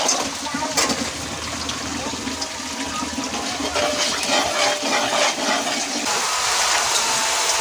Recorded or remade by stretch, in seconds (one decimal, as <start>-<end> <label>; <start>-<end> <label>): 0.0-7.6 recorded